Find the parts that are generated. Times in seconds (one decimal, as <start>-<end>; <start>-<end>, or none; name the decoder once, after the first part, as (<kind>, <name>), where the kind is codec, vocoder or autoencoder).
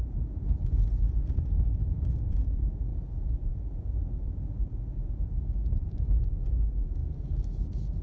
0.0-7.0 (vocoder, Vocos)